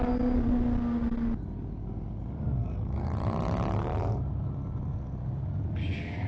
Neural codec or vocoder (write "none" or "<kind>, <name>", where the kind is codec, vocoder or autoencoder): none